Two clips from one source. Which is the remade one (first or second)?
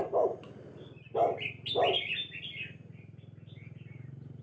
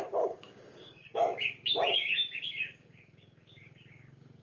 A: second